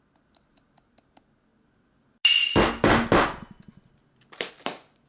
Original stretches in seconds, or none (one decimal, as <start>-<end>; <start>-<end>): 0.0-5.1